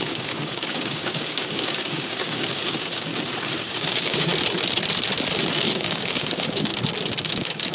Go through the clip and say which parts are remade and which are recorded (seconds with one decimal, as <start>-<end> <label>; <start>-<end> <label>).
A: 0.0-3.1 remade; 3.1-3.6 recorded; 3.6-4.3 remade; 4.3-5.5 recorded; 5.5-6.7 remade; 6.7-7.2 recorded; 7.2-7.7 remade